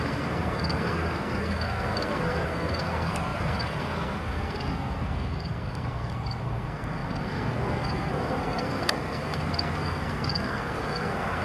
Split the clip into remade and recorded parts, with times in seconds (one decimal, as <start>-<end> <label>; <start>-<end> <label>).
0.0-11.4 remade